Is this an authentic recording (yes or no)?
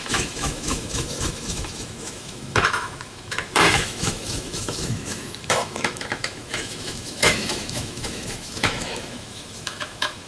no